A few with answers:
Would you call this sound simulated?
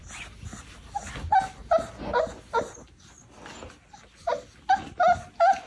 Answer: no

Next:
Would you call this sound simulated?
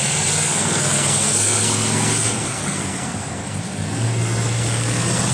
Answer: yes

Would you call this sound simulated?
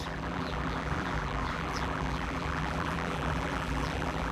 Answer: yes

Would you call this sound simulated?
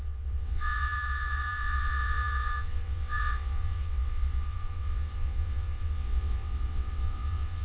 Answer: yes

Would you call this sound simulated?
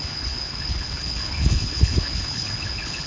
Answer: yes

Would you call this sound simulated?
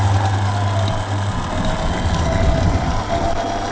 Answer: no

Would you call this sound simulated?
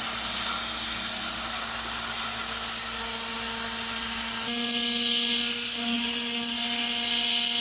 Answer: no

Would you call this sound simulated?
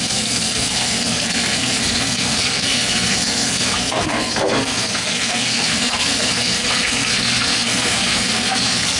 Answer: yes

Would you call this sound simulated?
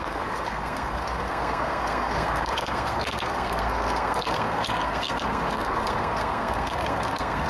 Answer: yes